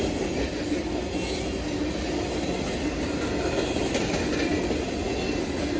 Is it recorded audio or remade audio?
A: recorded